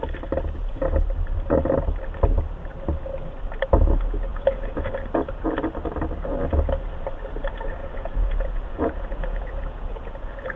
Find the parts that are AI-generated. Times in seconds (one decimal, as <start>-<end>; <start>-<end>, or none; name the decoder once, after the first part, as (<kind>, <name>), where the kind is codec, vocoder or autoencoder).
4.3-4.9 (vocoder, Vocos); 7.8-10.6